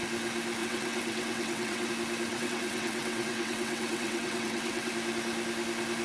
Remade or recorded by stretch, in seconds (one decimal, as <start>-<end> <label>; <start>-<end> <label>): 0.0-0.6 recorded; 0.6-1.9 remade; 1.9-2.3 recorded; 2.3-4.9 remade; 4.9-6.0 recorded